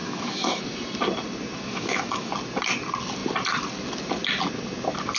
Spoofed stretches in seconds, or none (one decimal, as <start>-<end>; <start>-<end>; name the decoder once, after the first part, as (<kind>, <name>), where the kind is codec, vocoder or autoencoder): 0.0-0.6 (autoencoder, DAC-VAE); 1.7-2.3